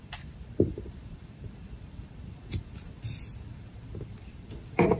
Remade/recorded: remade